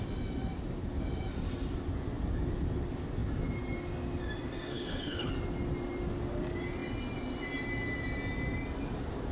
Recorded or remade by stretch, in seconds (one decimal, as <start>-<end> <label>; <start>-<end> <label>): 0.0-4.7 recorded; 4.7-5.3 remade; 5.3-9.3 recorded